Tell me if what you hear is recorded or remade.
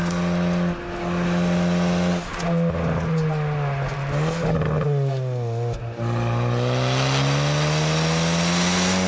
recorded